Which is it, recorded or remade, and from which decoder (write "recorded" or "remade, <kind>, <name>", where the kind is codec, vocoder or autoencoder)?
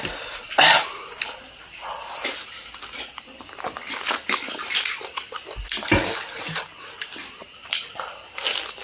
recorded